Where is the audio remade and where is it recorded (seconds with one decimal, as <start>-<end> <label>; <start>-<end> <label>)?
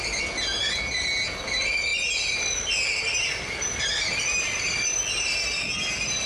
0.0-6.3 recorded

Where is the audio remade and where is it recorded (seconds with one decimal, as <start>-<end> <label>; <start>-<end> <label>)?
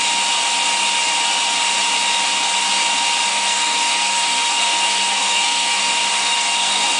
0.0-3.3 recorded; 3.3-5.8 remade; 5.8-6.2 recorded; 6.2-7.0 remade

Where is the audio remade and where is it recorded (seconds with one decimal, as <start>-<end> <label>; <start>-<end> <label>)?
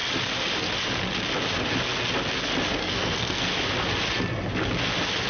0.0-2.8 recorded; 2.8-3.5 remade; 3.5-5.3 recorded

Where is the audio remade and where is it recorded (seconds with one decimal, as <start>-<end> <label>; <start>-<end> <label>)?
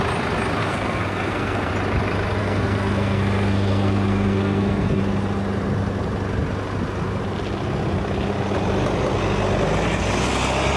0.0-0.6 recorded; 0.6-1.7 remade; 1.7-2.4 recorded; 2.4-5.0 remade; 5.0-10.8 recorded